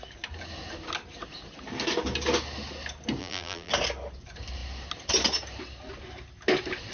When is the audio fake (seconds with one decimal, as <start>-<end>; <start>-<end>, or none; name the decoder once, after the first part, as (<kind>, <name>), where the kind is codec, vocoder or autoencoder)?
3.2-3.7 (vocoder, BigVGAN v2)

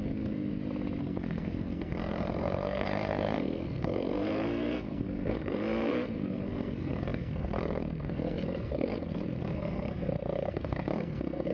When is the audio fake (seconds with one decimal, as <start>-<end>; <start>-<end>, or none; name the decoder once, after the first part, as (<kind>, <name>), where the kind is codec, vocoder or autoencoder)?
0.0-0.5 (codec, SNAC); 1.0-11.5